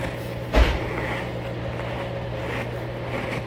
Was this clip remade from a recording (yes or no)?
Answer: no